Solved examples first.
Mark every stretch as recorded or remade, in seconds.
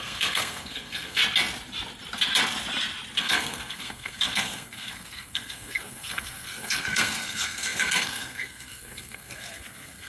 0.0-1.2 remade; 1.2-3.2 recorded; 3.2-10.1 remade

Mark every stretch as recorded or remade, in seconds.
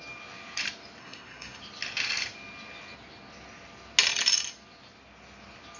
0.0-1.0 recorded; 1.0-1.6 remade; 1.6-5.8 recorded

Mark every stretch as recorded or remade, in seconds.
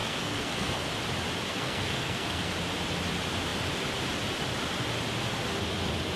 0.0-0.9 remade; 0.9-1.5 recorded; 1.5-2.5 remade; 2.5-6.2 recorded